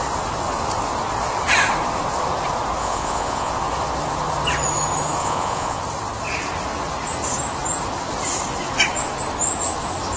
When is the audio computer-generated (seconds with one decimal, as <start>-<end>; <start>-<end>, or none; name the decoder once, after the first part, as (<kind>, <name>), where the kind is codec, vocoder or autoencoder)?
2.8-3.5 (vocoder, Vocos); 5.2-5.8